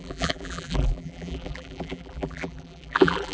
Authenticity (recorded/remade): remade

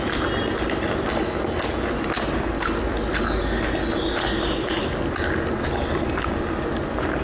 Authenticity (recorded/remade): recorded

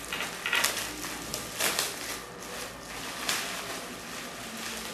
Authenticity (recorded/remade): recorded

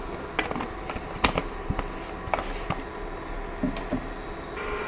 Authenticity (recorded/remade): recorded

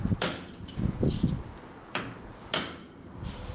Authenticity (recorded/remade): remade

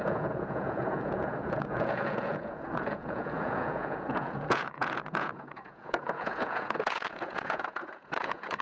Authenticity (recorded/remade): remade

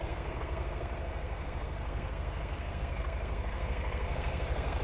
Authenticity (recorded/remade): remade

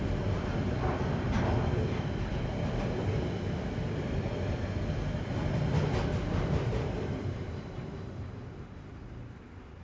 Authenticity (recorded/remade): recorded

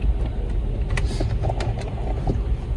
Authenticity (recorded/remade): recorded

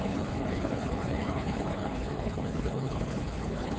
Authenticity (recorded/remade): remade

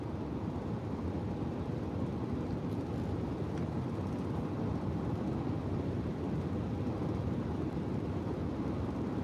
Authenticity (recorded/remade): recorded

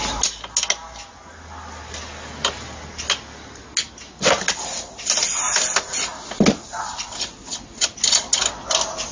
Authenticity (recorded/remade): recorded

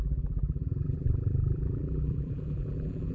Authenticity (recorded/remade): remade